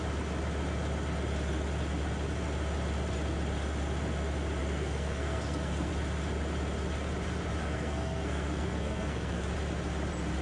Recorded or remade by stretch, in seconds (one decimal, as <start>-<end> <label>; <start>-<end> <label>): 0.0-4.6 recorded; 4.6-5.9 remade; 5.9-7.6 recorded; 7.6-9.5 remade; 9.5-10.4 recorded